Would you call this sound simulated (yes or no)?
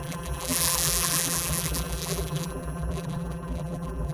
yes